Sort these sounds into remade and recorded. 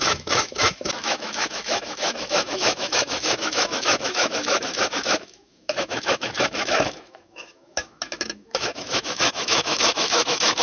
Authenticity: remade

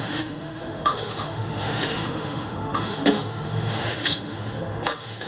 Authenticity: remade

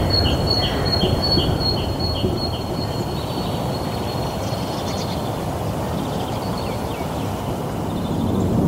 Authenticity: recorded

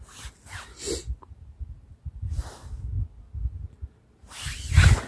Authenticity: recorded